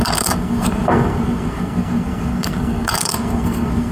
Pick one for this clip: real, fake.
fake